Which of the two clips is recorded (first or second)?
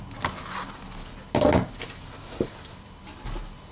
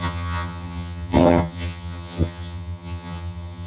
first